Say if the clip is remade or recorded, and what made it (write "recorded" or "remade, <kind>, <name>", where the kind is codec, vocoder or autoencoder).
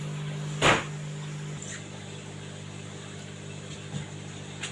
recorded